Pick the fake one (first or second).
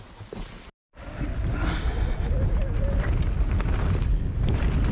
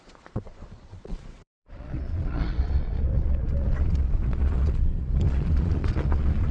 second